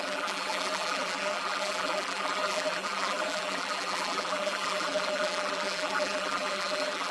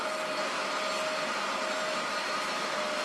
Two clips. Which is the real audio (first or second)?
second